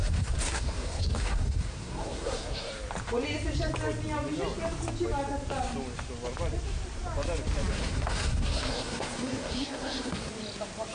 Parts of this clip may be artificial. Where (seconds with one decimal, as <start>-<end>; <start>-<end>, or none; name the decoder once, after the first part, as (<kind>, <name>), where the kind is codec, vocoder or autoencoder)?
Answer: 0.0-2.7 (codec, SNAC); 7.7-10.3